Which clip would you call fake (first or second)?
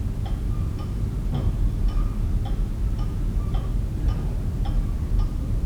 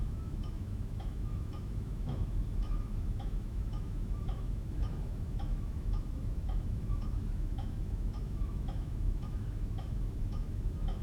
second